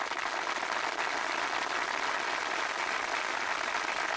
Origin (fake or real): real